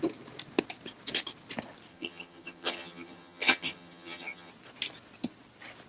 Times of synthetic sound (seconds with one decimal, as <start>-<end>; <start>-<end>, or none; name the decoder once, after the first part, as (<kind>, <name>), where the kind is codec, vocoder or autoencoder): 1.9-4.5 (vocoder, HiFi-GAN)